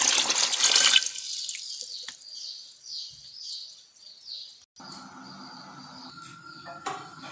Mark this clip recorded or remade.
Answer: recorded